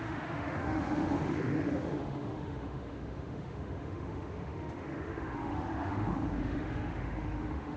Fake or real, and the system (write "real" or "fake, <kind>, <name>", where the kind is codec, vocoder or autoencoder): fake, autoencoder, DAC-VAE